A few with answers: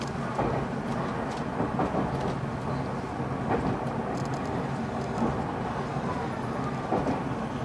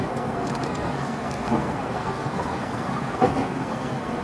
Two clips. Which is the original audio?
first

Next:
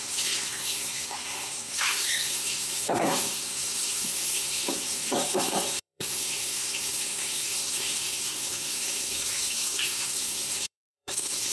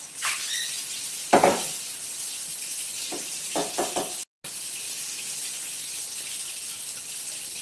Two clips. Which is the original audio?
second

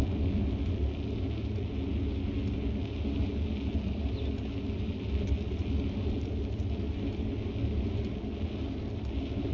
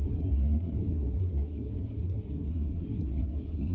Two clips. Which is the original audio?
first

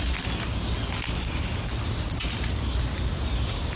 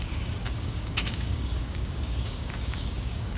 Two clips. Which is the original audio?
first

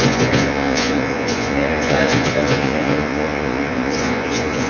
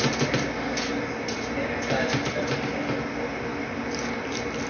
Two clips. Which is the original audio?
second